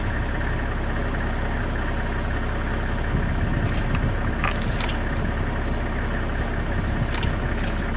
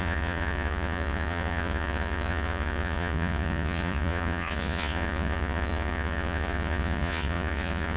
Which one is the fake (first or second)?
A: second